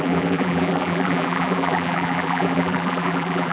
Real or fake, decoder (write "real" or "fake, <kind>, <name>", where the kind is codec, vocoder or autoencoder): fake, vocoder, BigVGAN v2